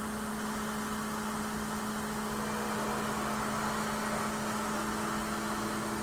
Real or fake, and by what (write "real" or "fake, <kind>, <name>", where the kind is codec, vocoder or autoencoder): real